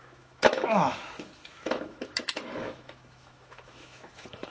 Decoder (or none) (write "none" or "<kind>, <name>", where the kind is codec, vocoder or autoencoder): autoencoder, DAC-VAE